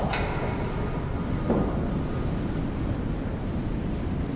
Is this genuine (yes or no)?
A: yes